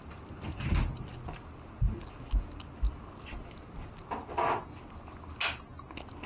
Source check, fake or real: real